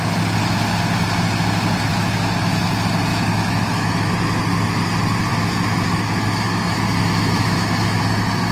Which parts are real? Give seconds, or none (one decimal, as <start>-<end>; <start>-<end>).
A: 0.0-1.9; 2.7-3.1; 4.1-5.3; 8.0-8.5